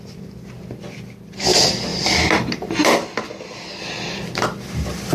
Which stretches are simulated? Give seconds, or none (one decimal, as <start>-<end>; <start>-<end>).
1.9-5.1